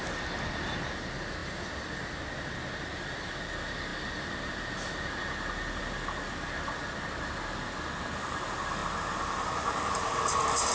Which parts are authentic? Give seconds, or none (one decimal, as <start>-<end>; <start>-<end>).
0.0-1.4; 2.2-10.7

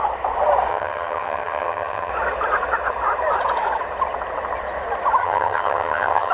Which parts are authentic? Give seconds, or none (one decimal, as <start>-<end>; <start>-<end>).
0.0-0.7; 2.1-5.2